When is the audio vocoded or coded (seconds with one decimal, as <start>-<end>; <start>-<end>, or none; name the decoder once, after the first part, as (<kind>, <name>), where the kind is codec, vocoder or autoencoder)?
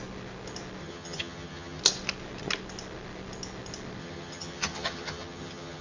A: 0.8-1.8 (vocoder, HiFi-GAN); 4.0-5.8